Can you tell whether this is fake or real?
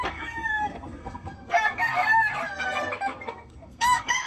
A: fake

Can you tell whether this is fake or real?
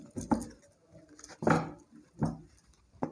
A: real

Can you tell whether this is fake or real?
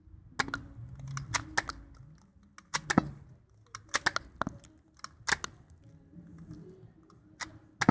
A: real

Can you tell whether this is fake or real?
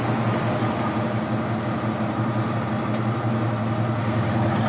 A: real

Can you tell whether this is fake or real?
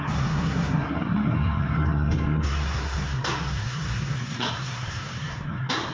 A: fake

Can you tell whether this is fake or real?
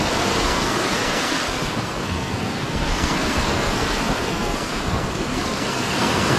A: fake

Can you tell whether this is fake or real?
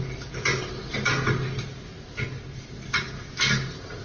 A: real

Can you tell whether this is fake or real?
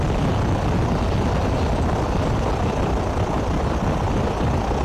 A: real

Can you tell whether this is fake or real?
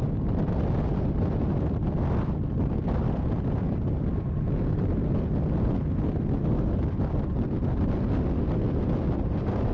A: real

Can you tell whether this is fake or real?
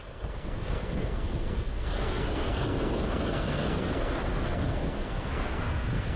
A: fake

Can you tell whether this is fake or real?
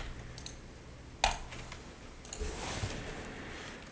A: real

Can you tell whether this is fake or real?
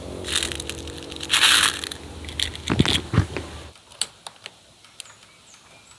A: real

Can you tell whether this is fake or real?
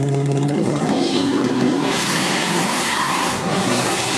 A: fake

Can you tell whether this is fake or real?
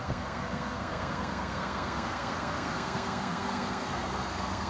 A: fake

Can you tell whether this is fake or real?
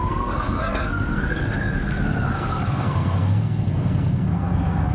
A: fake